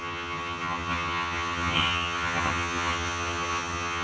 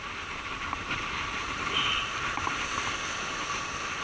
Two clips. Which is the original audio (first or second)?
second